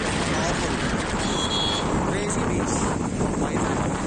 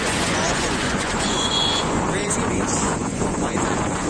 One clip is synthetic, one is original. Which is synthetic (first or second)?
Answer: second